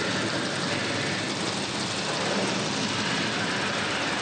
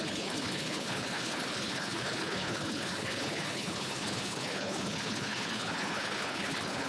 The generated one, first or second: second